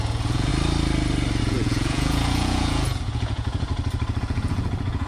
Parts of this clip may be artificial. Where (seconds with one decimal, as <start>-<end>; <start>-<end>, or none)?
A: 0.0-0.5; 1.4-3.7; 4.2-5.1